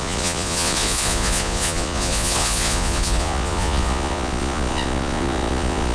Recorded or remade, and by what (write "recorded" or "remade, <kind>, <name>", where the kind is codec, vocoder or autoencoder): remade, vocoder, Vocos